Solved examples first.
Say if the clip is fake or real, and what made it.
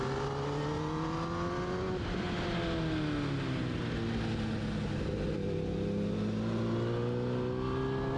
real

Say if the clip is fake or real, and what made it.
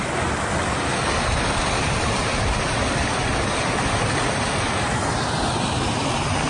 real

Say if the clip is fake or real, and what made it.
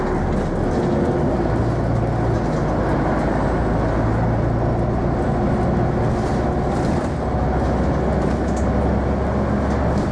real